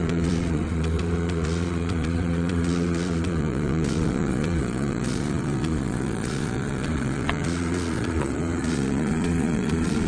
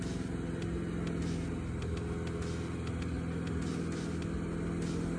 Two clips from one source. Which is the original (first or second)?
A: second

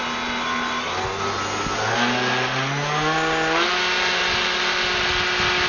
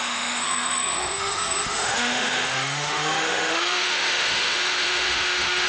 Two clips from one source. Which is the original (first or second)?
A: first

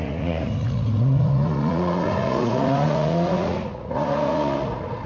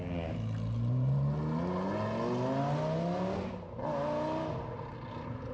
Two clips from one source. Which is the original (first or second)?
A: second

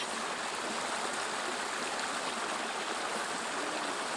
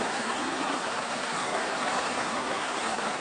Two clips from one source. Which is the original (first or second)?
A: first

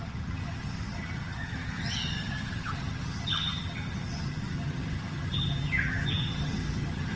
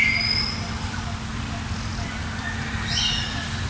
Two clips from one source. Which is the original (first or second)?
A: second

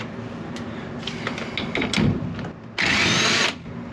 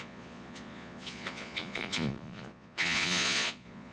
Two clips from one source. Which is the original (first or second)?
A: first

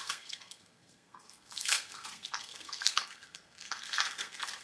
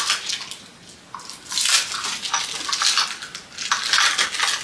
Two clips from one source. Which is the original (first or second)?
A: second